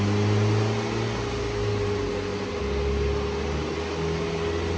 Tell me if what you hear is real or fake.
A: real